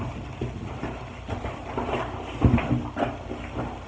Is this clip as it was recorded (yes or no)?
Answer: yes